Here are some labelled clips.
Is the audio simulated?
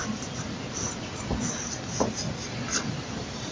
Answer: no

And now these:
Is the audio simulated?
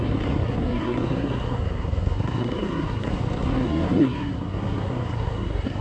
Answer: yes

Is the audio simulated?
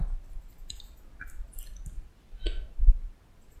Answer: no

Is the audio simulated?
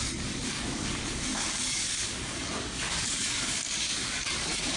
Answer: yes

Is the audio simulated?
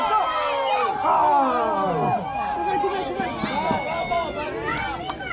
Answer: no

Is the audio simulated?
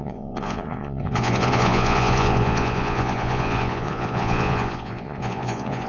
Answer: yes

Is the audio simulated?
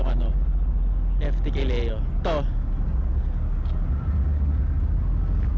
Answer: no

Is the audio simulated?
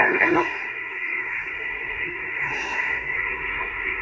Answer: yes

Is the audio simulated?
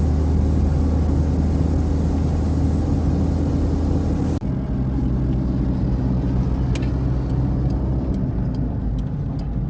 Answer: no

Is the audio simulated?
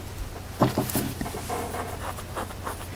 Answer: no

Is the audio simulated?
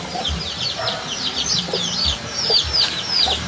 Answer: yes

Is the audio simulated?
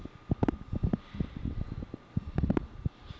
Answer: no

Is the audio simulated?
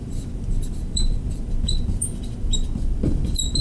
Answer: yes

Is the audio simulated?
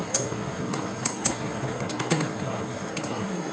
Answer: yes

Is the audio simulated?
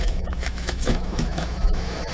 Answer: yes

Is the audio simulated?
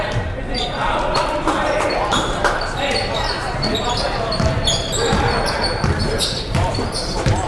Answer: yes